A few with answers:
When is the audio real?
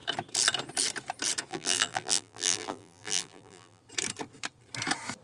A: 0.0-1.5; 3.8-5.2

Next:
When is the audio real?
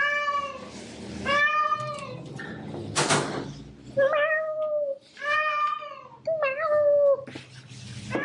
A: 0.0-1.7; 2.5-8.2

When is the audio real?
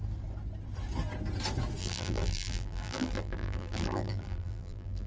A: 0.0-1.8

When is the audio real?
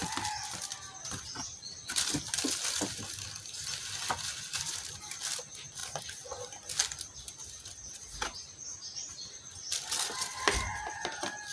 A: 0.0-11.5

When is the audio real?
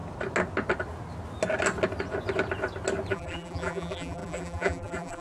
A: 0.0-3.1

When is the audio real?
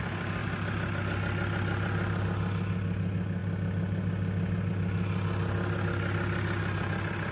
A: 0.0-0.4; 1.0-7.3